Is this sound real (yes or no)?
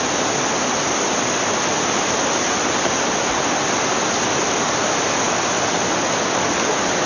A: yes